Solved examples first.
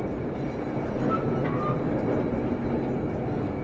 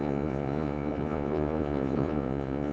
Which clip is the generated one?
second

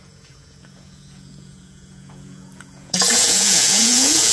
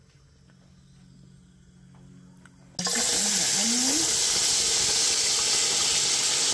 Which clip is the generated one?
first